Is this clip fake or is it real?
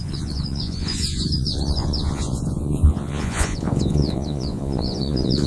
fake